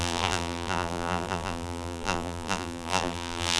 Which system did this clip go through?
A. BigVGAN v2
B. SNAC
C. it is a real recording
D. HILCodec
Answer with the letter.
A